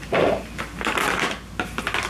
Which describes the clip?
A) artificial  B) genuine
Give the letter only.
B